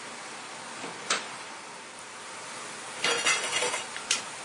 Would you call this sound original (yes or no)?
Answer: yes